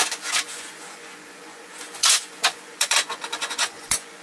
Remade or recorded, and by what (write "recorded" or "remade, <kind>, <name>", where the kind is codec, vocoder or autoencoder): remade, vocoder, Vocos